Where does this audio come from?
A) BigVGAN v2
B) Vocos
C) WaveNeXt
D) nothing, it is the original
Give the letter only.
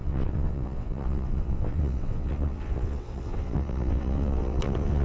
C